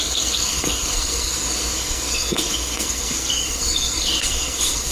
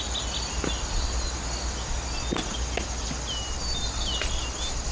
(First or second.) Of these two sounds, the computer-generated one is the first